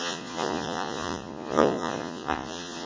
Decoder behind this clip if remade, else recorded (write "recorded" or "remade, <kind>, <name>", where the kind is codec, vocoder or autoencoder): remade, vocoder, Vocos